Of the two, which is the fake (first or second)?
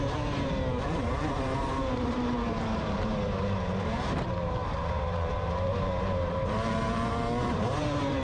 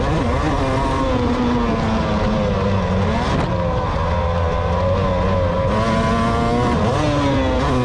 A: first